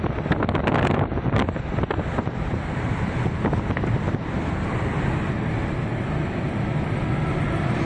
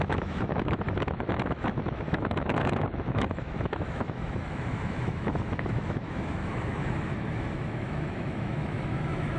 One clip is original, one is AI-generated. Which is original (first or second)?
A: first